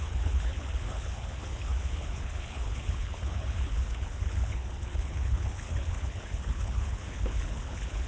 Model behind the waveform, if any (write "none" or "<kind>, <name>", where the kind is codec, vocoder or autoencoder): codec, HILCodec